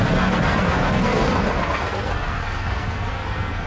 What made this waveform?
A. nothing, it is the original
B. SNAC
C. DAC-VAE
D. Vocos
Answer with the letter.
B